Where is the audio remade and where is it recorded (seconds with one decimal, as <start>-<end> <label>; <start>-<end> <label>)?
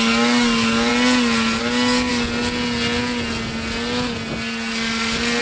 0.0-0.9 remade; 0.9-1.6 recorded; 1.6-2.1 remade; 2.1-5.4 recorded